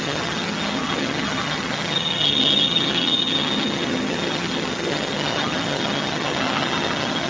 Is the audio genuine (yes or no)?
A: no